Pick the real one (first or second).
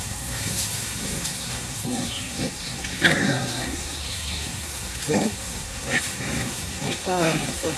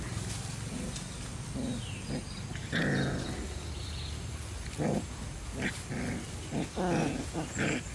second